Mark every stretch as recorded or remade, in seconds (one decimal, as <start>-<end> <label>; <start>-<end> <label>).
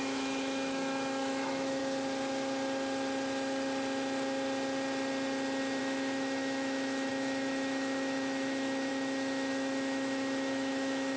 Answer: 0.0-1.8 remade; 1.8-5.8 recorded; 5.8-11.2 remade